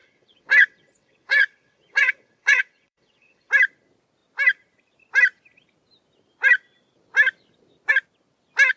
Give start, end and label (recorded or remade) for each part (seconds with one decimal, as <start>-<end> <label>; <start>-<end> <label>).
0.0-3.5 remade; 3.5-8.8 recorded